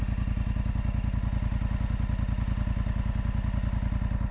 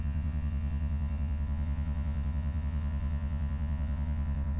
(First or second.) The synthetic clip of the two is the second